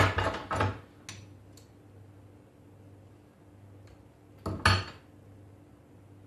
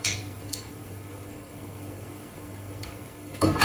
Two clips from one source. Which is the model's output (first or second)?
second